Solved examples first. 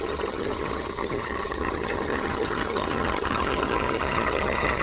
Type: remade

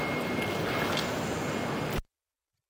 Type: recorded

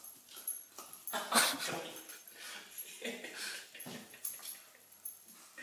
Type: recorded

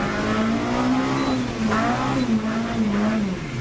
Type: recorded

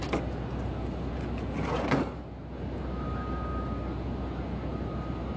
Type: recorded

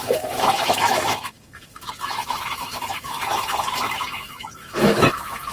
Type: remade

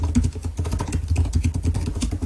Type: recorded